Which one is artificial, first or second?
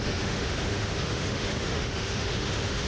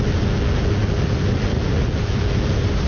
first